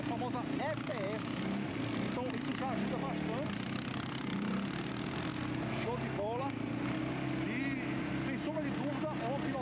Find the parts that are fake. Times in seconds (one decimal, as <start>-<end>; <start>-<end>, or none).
0.9-1.7